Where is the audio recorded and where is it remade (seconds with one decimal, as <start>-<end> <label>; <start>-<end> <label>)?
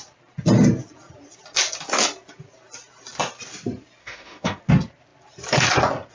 0.0-4.0 recorded; 4.0-4.6 remade; 4.6-6.1 recorded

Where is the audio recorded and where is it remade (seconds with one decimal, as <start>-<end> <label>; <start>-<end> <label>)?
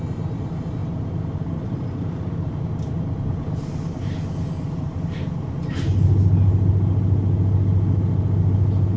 0.0-9.0 recorded